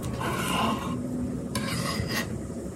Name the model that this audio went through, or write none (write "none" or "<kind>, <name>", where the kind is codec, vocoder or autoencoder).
vocoder, BigVGAN v2